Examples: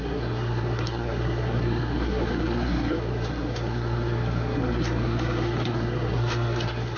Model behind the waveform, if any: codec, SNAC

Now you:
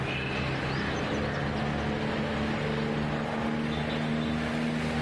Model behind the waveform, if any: none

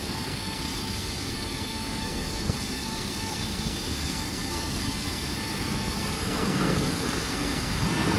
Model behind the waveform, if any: codec, SNAC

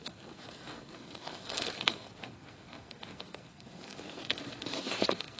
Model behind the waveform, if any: codec, SNAC